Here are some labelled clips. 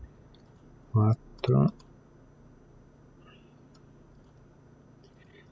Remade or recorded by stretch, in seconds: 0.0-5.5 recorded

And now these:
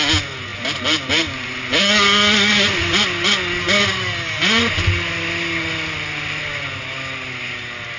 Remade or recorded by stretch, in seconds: 0.0-8.0 recorded

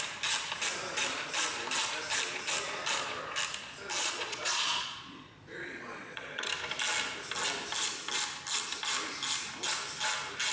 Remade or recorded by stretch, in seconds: 0.0-4.0 recorded; 4.0-6.5 remade; 6.5-10.5 recorded

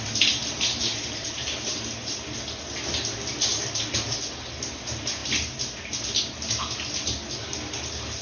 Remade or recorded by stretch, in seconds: 0.0-0.4 recorded; 0.4-2.1 remade; 2.1-8.2 recorded

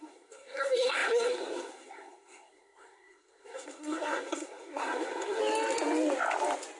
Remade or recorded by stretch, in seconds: 0.0-5.4 remade; 5.4-6.8 recorded

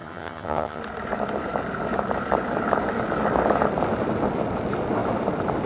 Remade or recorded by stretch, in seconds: 0.0-0.8 remade; 0.8-5.7 recorded